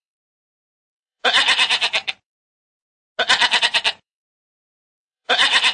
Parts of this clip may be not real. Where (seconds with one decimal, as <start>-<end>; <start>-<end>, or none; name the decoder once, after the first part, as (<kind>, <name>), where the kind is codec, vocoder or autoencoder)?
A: 0.0-2.4 (vocoder, BigVGAN v2); 3.6-5.7